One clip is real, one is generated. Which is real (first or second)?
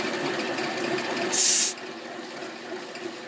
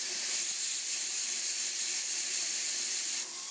first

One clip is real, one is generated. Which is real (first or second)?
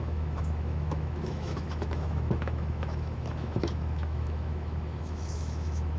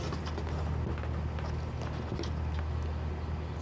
second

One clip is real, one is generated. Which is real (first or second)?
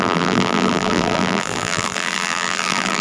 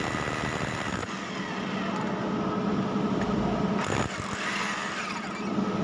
second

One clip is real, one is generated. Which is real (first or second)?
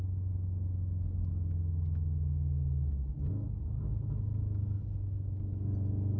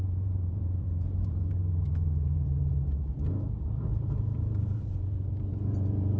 first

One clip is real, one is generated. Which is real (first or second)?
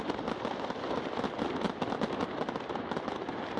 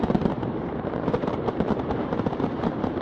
first